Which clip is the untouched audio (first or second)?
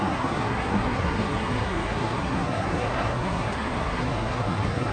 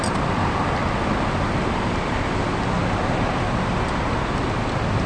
second